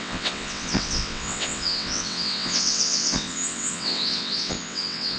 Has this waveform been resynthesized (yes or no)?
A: yes